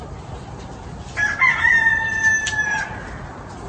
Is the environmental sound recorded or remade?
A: recorded